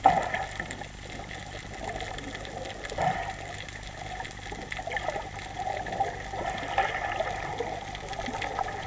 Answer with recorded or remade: recorded